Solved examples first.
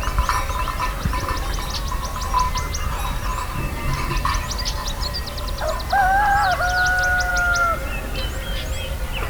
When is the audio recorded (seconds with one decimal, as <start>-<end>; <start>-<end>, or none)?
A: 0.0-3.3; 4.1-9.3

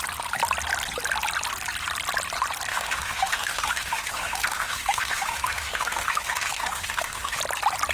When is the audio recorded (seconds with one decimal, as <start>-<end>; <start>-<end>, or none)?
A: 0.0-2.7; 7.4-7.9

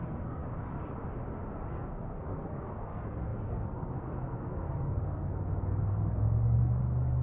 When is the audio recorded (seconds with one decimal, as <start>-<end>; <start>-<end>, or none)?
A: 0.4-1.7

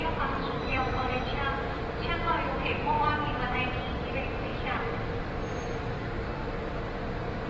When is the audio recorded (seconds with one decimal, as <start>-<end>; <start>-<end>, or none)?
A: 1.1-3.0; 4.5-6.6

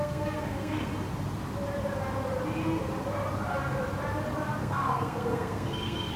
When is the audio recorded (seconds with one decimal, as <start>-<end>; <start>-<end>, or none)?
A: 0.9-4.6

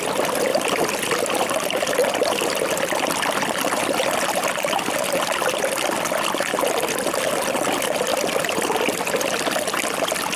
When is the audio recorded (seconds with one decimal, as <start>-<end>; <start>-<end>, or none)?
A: 0.0-10.4

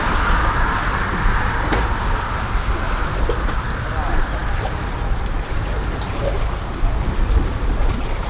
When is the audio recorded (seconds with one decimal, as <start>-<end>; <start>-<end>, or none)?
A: 0.0-8.3